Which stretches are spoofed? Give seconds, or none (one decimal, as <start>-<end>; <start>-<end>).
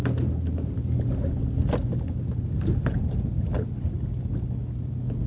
none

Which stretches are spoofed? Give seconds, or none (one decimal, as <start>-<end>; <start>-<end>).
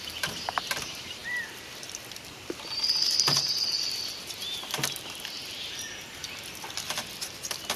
0.0-7.8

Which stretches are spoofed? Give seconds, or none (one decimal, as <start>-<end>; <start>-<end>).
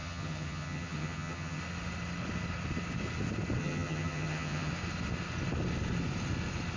0.0-1.6; 3.6-4.7